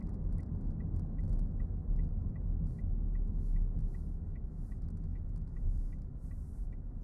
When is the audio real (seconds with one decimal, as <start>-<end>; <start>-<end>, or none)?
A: 0.0-5.1; 5.9-7.0